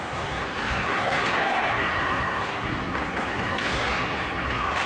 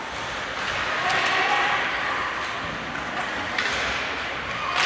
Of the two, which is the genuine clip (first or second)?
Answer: second